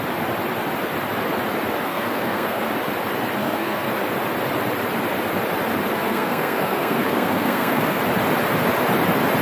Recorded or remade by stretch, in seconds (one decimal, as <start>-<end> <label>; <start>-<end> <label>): 0.0-1.9 recorded; 1.9-2.6 remade; 2.6-3.4 recorded; 3.4-3.9 remade; 3.9-5.9 recorded; 5.9-8.0 remade; 8.0-9.4 recorded